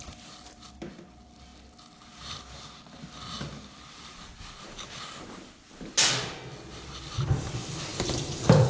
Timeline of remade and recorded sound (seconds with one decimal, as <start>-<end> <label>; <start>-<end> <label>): 0.0-8.7 recorded